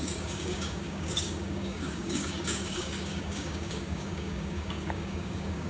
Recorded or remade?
remade